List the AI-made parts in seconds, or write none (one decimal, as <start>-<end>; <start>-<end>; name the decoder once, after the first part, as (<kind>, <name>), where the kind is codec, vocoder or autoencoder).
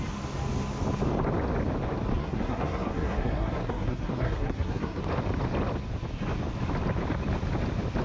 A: 2.2-5.0 (codec, SNAC)